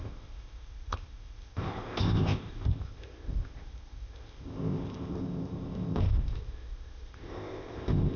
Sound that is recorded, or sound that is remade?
remade